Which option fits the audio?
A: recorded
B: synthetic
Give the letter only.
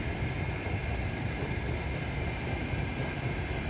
A